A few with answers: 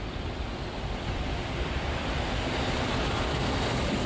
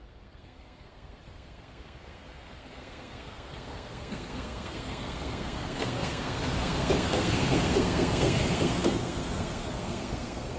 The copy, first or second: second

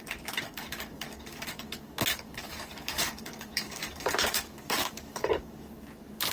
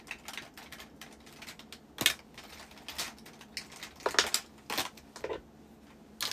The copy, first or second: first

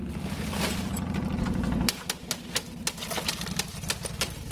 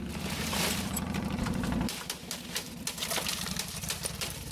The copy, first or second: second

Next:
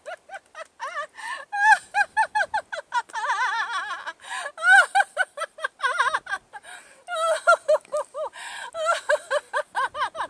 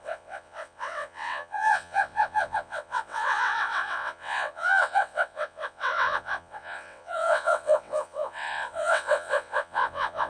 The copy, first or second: second